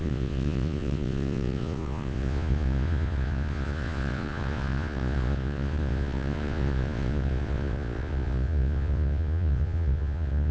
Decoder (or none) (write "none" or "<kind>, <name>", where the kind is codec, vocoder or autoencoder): vocoder, Vocos